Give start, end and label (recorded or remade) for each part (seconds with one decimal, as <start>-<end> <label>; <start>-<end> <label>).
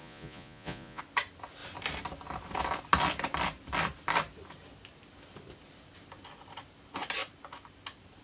0.0-1.0 remade; 1.0-8.2 recorded